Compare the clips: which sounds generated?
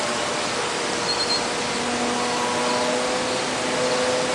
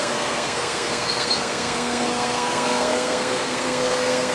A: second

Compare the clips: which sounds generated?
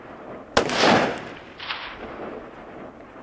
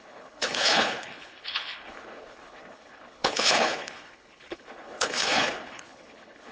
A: second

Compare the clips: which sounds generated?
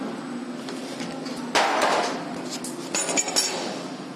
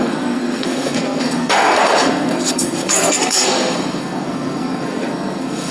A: second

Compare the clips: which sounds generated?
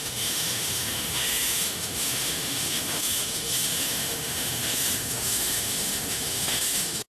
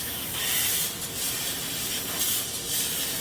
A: first